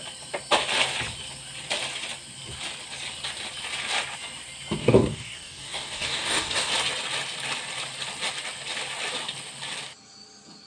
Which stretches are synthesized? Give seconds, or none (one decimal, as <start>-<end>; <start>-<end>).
4.8-6.7